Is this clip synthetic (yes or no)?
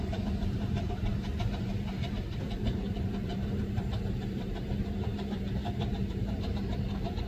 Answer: yes